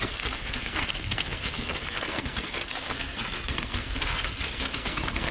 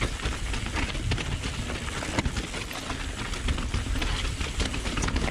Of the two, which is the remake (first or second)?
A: first